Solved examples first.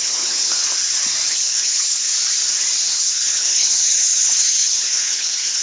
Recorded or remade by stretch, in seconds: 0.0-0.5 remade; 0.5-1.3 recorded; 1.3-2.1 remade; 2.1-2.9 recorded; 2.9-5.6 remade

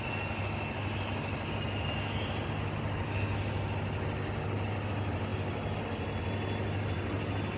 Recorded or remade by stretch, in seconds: 0.0-7.6 recorded